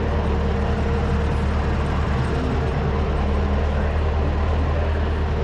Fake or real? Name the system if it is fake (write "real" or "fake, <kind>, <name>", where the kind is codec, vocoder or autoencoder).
real